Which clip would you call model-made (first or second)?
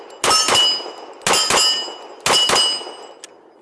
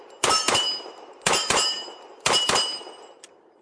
second